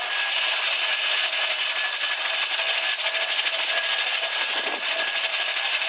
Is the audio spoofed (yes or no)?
no